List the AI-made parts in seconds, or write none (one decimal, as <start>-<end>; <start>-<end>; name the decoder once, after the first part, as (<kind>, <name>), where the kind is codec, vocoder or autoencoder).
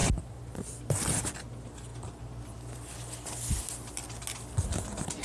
none